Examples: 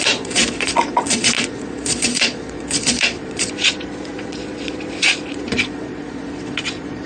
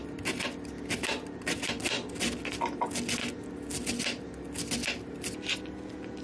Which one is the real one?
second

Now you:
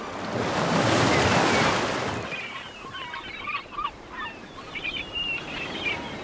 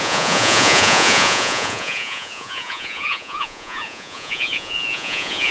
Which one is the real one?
first